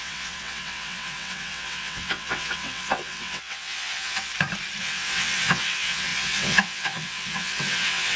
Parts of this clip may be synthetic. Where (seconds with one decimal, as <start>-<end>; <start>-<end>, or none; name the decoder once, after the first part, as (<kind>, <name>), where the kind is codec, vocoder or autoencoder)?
0.0-4.3 (vocoder, WaveNeXt); 4.8-8.2